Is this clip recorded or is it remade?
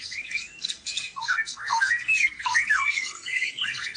remade